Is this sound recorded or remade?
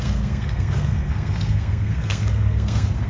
remade